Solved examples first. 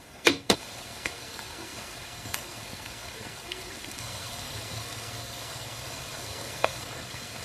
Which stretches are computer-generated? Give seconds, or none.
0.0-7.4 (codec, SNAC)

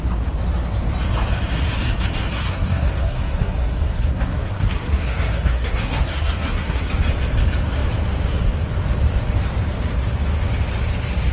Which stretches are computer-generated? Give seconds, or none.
2.3-6.9 (codec, SNAC)

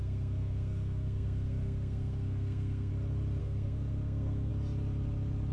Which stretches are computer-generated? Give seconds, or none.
0.0-2.9 (codec, SNAC); 3.4-4.5

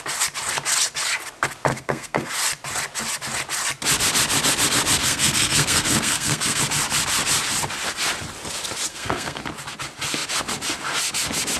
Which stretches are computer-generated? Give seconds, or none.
1.7-2.3 (codec, SNAC); 5.0-6.6; 8.9-9.4